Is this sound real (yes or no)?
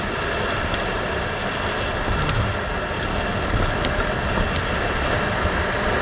yes